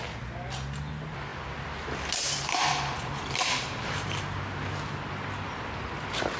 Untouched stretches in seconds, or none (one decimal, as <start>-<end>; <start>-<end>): 0.0-1.3; 5.1-6.4